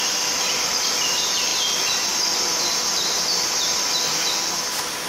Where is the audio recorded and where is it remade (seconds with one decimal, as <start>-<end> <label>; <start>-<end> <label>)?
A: 0.0-5.1 recorded